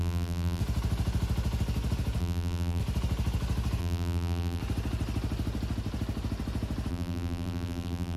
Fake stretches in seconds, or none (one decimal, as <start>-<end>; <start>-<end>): 0.0-0.6; 2.2-2.8; 3.8-4.6; 6.9-8.2